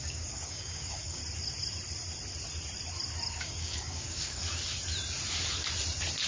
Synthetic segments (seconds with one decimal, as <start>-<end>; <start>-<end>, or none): 0.0-1.2; 3.4-4.4